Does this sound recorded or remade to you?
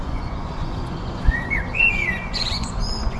remade